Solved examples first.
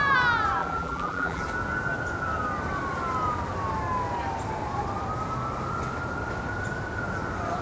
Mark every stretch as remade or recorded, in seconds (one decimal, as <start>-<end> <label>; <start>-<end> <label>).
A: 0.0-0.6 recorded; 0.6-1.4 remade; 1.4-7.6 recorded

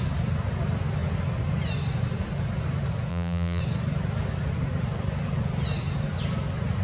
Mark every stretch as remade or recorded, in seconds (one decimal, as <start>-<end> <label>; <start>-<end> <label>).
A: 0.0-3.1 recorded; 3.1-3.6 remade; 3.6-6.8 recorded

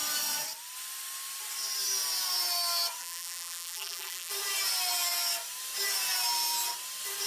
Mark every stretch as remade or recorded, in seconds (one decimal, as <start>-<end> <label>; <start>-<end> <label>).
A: 0.0-3.0 recorded; 3.0-4.3 remade; 4.3-7.3 recorded